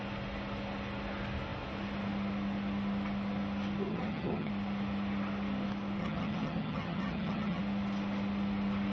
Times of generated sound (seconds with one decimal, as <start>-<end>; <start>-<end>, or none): 3.9-4.5; 6.0-7.6